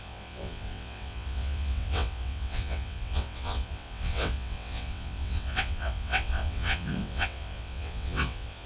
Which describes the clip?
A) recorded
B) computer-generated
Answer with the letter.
B